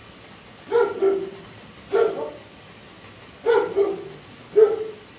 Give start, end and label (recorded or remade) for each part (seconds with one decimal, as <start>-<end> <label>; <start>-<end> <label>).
0.0-5.2 recorded